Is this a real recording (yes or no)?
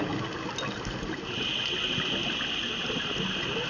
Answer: yes